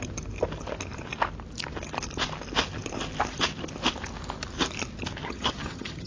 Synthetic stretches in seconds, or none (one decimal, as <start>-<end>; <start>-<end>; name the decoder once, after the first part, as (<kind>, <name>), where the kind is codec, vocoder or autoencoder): 5.2-6.1 (vocoder, HiFi-GAN)